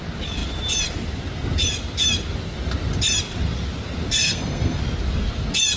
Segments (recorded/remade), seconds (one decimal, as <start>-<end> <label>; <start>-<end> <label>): 0.0-4.2 recorded; 4.2-4.8 remade; 4.8-5.8 recorded